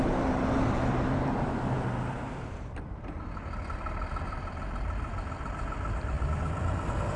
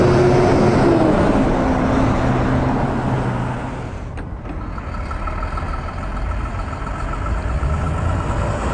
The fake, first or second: first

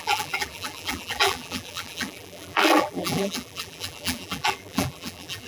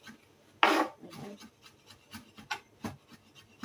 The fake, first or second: first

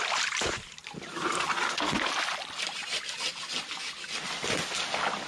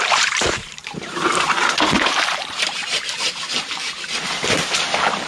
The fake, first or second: second